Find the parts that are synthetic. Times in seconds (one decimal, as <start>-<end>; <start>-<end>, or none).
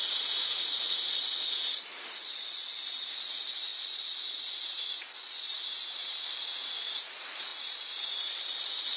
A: 0.0-9.0